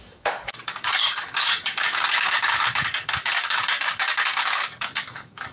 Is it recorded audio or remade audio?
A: remade